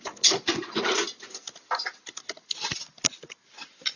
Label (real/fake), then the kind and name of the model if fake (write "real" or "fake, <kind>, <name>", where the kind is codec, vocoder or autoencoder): real